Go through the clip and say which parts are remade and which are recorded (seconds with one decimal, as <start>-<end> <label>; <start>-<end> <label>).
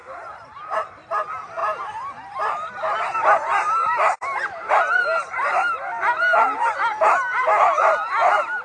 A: 0.0-0.9 remade; 0.9-3.5 recorded; 3.5-7.1 remade; 7.1-8.6 recorded